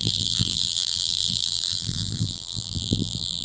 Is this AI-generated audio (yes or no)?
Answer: yes